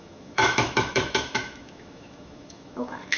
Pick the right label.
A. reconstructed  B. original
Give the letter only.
A